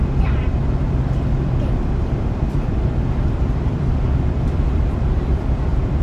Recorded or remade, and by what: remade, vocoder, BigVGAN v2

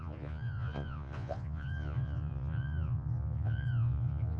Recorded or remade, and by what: remade, vocoder, Vocos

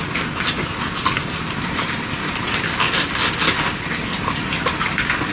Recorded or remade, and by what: recorded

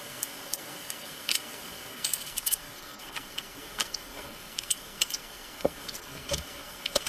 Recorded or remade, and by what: remade, codec, SNAC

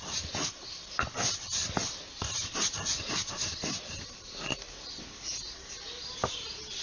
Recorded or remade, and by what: recorded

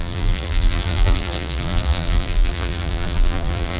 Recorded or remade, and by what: remade, vocoder, BigVGAN v2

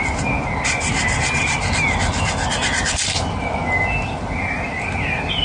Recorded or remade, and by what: recorded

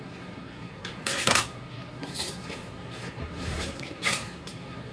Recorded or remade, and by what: remade, codec, SNAC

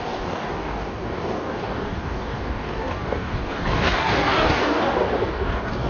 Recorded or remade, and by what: remade, codec, DAC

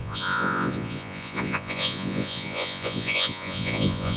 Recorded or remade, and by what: remade, vocoder, Vocos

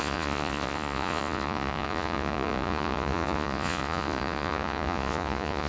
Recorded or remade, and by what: remade, vocoder, Vocos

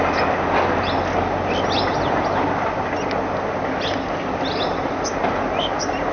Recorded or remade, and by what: recorded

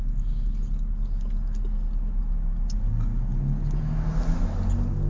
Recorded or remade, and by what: recorded